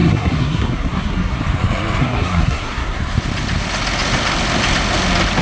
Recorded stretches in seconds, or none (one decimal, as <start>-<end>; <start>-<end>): 1.4-2.0; 3.0-5.4